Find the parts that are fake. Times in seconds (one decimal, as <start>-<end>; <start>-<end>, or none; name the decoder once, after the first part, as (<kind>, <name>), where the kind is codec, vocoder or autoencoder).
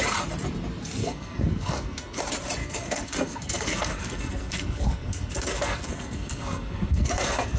1.0-2.2 (codec, SNAC); 2.6-7.6